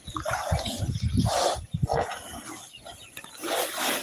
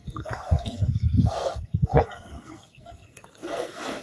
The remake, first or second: second